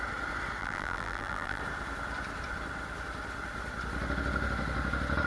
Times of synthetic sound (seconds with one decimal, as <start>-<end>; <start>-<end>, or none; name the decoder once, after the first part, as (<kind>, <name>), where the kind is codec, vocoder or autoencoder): 0.6-1.6 (vocoder, BigVGAN v2)